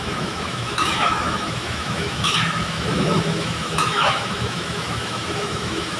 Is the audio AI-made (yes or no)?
yes